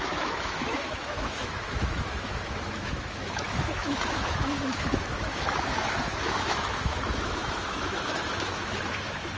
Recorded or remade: remade